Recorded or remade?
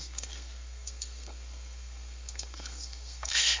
remade